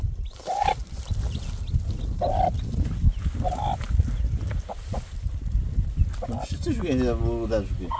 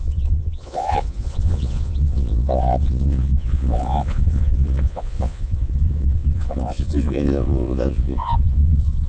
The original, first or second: first